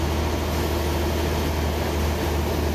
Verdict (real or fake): real